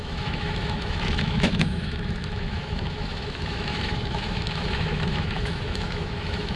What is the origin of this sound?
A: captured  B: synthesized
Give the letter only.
B